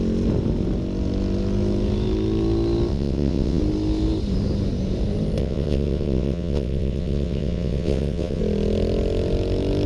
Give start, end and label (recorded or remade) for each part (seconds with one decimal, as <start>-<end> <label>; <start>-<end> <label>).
0.0-2.9 recorded; 2.9-3.6 remade; 3.6-5.4 recorded; 5.4-8.4 remade; 8.4-9.9 recorded